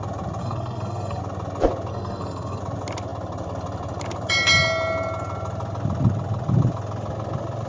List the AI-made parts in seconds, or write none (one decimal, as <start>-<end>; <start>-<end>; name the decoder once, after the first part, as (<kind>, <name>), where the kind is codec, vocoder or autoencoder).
0.4-1.2 (codec, SNAC); 1.9-2.6